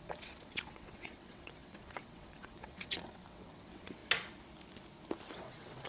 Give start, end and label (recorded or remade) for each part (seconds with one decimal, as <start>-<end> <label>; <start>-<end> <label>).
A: 0.0-4.0 remade; 4.0-5.3 recorded; 5.3-5.9 remade